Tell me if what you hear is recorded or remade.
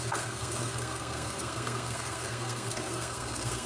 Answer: remade